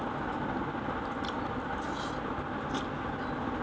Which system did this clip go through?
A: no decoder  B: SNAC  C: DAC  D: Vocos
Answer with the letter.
A